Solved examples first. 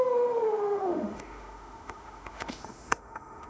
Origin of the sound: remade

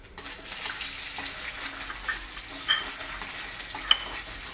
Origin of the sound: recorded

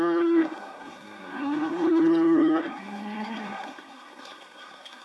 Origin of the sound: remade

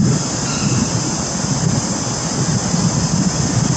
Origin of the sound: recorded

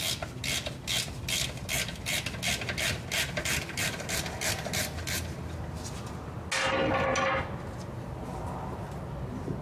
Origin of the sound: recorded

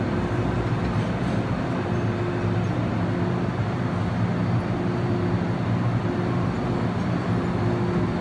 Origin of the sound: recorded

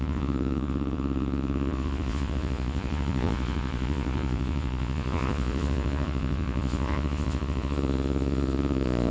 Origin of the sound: remade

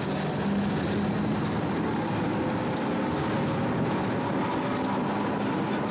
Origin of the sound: recorded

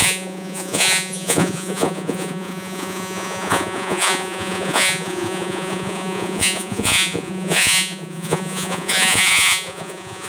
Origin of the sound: remade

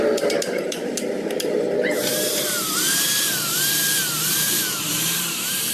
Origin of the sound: remade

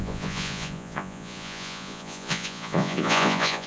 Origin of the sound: remade